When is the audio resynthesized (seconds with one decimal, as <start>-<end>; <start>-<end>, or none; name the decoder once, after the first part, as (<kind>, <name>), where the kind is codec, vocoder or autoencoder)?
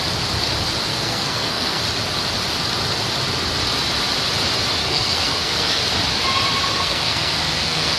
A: 0.9-1.8 (codec, SNAC); 4.8-5.8; 6.7-8.0